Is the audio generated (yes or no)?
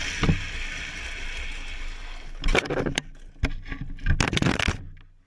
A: no